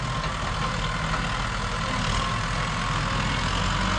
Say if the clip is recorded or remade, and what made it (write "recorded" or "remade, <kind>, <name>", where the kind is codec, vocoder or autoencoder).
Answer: recorded